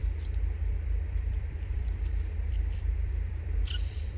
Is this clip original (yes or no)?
no